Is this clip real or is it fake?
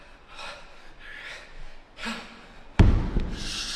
real